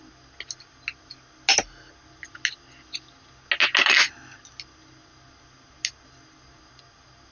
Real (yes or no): yes